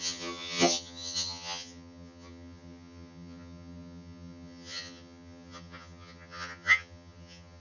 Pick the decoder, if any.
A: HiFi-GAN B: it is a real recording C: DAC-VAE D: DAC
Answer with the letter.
A